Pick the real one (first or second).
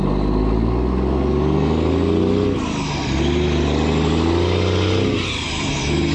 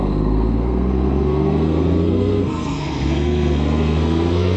first